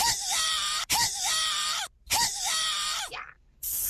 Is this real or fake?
fake